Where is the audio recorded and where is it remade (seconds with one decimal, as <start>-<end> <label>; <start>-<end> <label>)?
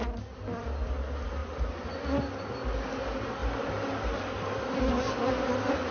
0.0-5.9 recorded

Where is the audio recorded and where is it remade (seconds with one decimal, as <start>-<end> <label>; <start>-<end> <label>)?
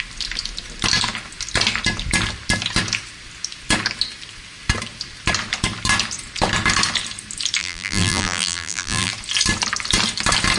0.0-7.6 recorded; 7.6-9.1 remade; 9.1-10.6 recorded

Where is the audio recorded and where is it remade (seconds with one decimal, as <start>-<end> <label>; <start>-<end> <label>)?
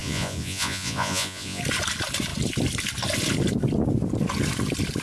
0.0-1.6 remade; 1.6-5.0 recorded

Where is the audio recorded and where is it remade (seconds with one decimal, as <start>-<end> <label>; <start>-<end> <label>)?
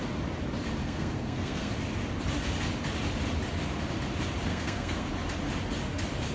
0.0-0.8 recorded; 0.8-1.7 remade; 1.7-4.5 recorded; 4.5-5.1 remade; 5.1-6.3 recorded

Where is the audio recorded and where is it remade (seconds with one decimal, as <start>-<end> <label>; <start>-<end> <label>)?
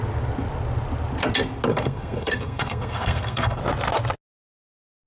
0.0-1.7 recorded; 1.7-3.6 remade; 3.6-5.1 recorded